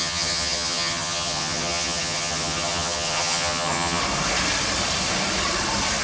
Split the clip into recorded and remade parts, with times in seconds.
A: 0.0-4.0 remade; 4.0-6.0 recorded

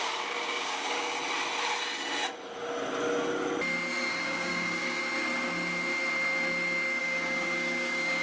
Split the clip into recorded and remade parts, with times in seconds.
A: 0.0-1.2 remade; 1.2-4.1 recorded; 4.1-5.0 remade; 5.0-7.0 recorded; 7.0-8.2 remade

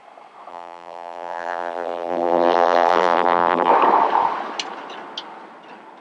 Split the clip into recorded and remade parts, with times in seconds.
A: 0.0-0.5 recorded; 0.5-3.7 remade; 3.7-6.0 recorded

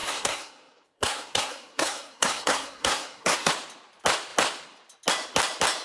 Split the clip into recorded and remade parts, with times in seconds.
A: 0.0-3.5 remade; 3.5-5.8 recorded

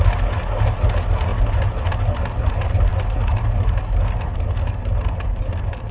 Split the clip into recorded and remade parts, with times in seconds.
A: 0.0-5.9 recorded

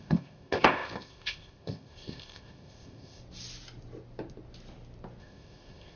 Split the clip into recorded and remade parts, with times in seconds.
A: 0.0-3.2 remade; 3.2-5.2 recorded; 5.2-6.0 remade